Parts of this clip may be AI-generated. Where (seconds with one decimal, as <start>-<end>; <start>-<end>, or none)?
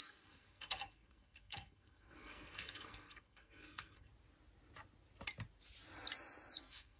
0.0-4.1; 6.6-7.0